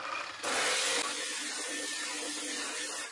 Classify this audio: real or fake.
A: real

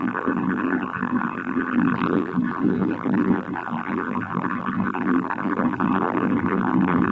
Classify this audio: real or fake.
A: fake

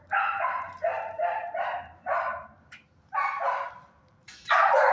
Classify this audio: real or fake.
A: fake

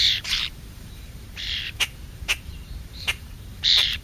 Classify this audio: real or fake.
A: fake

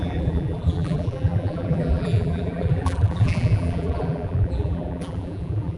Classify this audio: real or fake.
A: fake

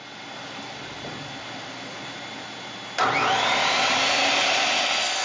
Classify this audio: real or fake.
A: fake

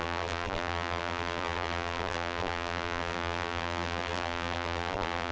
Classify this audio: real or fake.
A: fake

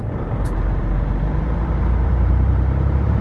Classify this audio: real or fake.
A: fake